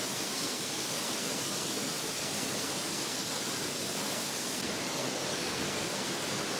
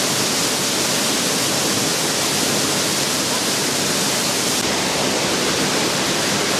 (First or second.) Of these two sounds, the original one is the second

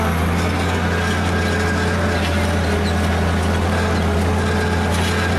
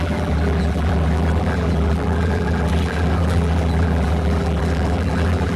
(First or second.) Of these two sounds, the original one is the first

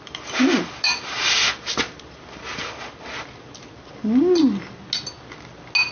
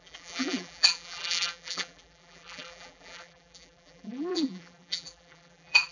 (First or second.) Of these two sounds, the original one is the first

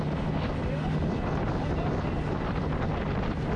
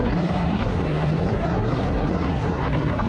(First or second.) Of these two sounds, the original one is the first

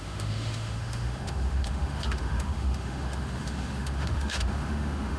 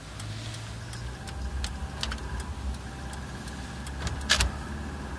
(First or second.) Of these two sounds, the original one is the second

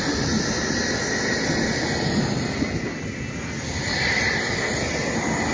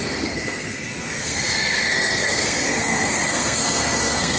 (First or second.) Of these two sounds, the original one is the first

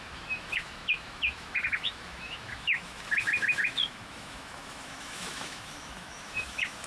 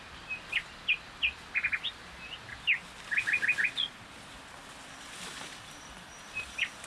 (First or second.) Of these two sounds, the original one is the second